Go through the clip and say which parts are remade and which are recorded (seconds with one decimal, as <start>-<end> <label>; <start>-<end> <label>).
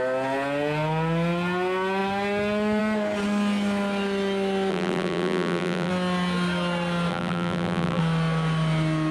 0.0-4.7 recorded; 4.7-5.9 remade; 5.9-7.1 recorded; 7.1-8.0 remade; 8.0-9.1 recorded